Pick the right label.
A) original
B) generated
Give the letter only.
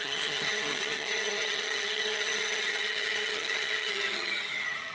B